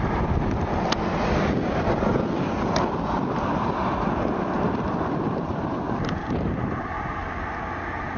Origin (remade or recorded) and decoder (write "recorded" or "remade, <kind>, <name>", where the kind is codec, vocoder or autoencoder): recorded